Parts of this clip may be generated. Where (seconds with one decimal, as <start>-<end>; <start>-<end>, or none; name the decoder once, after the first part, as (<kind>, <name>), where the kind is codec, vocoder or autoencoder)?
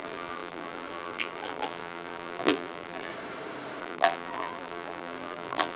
0.0-3.1 (vocoder, BigVGAN v2); 3.8-5.8